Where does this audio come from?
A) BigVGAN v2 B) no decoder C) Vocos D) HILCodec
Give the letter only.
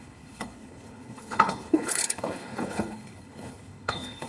D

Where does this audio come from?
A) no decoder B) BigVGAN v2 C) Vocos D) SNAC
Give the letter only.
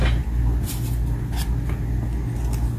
A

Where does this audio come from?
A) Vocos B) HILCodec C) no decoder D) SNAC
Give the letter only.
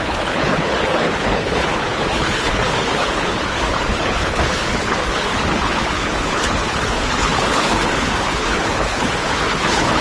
B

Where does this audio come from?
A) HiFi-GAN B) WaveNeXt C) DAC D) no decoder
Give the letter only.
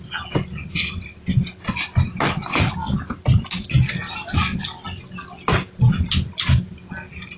D